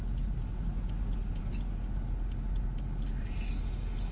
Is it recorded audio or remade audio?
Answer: recorded